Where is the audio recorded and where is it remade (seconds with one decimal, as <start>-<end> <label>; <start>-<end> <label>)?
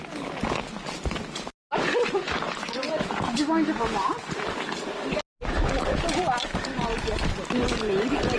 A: 0.0-8.4 recorded